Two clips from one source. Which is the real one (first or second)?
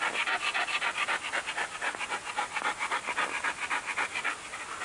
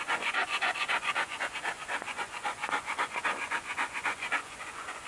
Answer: first